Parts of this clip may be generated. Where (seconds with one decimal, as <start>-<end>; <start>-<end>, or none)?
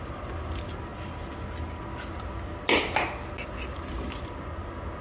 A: none